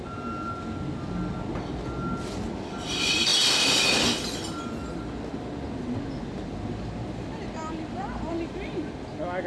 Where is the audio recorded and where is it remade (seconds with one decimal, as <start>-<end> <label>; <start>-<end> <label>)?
0.0-9.5 recorded